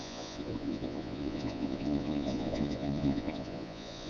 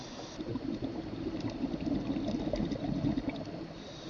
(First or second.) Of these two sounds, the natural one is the second